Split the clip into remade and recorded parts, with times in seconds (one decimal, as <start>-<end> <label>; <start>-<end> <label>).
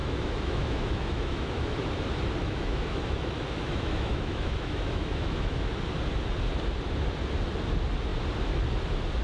0.0-2.0 remade; 2.0-2.4 recorded; 2.4-5.7 remade; 5.7-9.2 recorded